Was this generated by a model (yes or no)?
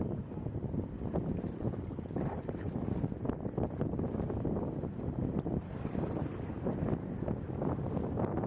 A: no